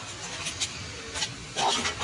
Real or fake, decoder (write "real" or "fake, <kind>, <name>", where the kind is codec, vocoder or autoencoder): real